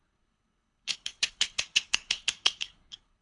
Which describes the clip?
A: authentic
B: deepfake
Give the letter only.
B